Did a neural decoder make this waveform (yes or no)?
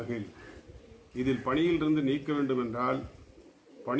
no